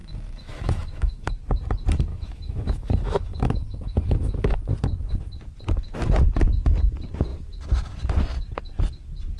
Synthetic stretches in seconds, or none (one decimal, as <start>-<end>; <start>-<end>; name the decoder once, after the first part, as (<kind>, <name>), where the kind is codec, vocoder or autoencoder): 0.0-1.3 (autoencoder, DAC-VAE); 2.1-4.7